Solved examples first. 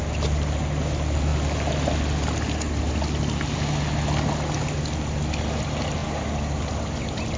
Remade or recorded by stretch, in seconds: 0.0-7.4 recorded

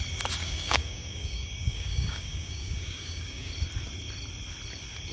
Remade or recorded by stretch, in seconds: 0.0-0.4 recorded; 0.4-3.5 remade; 3.5-5.1 recorded

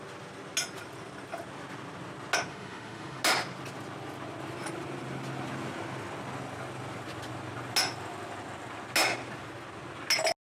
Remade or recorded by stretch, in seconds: 0.0-2.5 recorded; 2.5-3.2 remade; 3.2-10.4 recorded

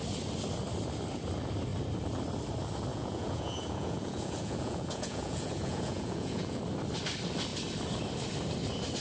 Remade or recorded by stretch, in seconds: 0.0-2.9 recorded; 2.9-6.6 remade; 6.6-9.0 recorded